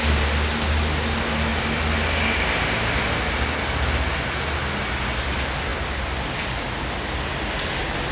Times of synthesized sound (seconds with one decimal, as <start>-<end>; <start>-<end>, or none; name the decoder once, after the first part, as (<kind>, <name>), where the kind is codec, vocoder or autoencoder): none